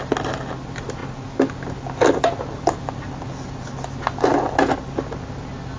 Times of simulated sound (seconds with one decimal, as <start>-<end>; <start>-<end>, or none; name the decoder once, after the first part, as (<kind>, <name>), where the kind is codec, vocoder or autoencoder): none